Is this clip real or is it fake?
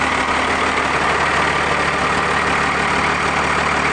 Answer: real